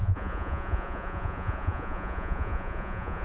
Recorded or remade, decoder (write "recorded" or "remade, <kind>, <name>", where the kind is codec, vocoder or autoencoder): remade, vocoder, Vocos